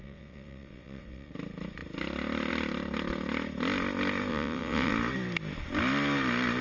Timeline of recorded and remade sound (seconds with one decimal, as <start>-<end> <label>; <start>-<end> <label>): 0.0-1.3 remade; 1.3-4.3 recorded; 4.3-4.9 remade; 4.9-6.6 recorded